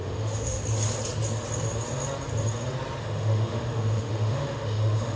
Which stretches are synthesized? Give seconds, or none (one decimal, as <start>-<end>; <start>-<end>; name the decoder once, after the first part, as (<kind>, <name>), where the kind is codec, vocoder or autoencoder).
0.0-0.6 (autoencoder, DAC-VAE); 3.0-5.2